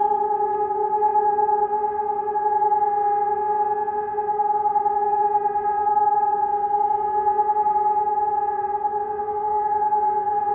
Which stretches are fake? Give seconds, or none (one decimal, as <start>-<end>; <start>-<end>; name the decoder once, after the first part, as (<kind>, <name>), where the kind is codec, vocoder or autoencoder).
none